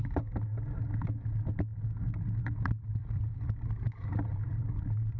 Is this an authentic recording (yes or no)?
yes